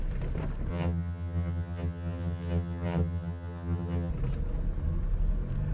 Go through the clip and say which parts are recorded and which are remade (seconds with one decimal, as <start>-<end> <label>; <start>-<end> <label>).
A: 0.0-0.7 recorded; 0.7-4.1 remade; 4.1-5.7 recorded